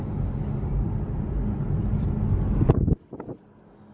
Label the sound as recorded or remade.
recorded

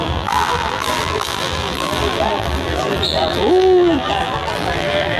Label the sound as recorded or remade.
remade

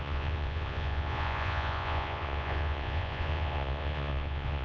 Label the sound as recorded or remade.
remade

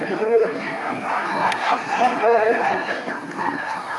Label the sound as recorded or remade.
remade